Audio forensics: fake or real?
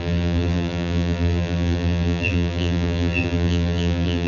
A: fake